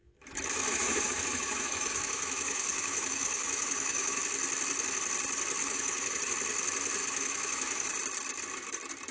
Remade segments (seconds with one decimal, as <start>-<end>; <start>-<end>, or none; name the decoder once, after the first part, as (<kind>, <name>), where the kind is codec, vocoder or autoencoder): 0.0-4.2 (autoencoder, DAC-VAE); 5.6-6.2; 7.0-8.0